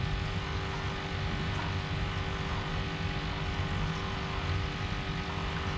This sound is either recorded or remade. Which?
recorded